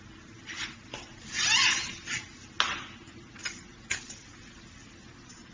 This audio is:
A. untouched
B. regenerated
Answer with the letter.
A